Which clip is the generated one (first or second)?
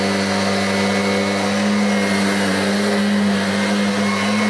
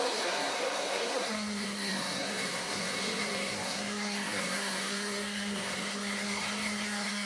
second